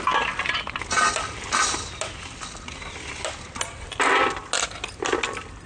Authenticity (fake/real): real